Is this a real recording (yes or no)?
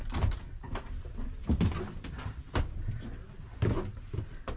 yes